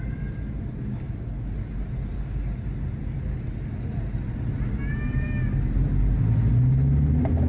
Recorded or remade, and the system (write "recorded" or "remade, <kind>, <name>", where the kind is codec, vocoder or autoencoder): recorded